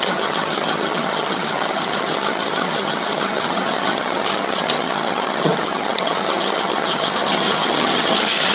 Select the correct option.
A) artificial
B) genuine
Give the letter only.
A